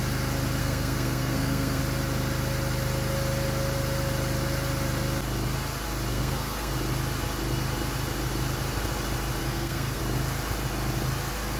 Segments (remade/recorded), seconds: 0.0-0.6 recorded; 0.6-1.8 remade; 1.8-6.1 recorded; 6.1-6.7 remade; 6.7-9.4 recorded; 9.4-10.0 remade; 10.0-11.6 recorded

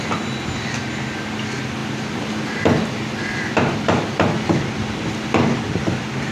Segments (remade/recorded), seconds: 0.0-6.3 recorded